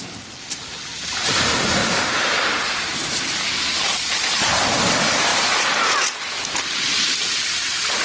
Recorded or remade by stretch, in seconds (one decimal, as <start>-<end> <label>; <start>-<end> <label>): 0.0-0.7 recorded; 0.7-1.3 remade; 1.3-1.8 recorded; 1.8-4.1 remade; 4.1-8.0 recorded